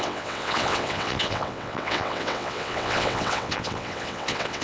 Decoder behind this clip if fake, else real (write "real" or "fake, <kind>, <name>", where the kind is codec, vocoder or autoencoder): fake, vocoder, WaveNeXt